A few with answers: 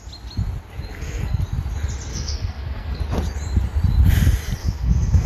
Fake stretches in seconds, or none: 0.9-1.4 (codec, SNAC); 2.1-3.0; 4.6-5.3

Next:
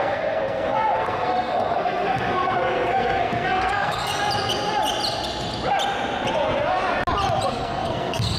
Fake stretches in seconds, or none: 0.0-4.2 (codec, SNAC); 7.5-8.4

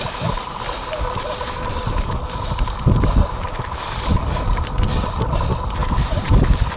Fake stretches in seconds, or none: 5.8-6.3 (vocoder, BigVGAN v2)

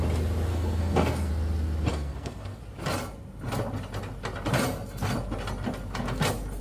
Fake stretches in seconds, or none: 0.5-1.3 (codec, SNAC); 1.9-2.6

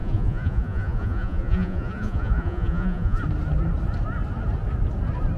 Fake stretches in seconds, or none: 0.0-3.2 (vocoder, Vocos)

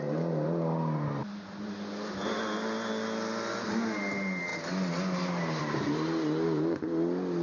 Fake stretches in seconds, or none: none

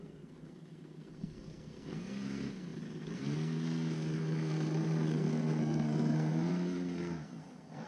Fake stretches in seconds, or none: 0.0-7.9 (codec, SNAC)

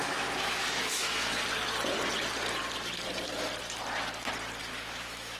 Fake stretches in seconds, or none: 0.0-1.4 (autoencoder, DAC-VAE); 4.6-5.4